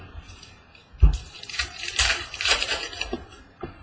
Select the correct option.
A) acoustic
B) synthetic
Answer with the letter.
B